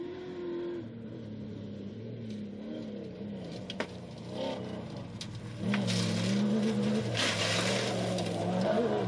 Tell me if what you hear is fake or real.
real